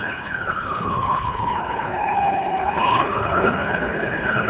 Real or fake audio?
fake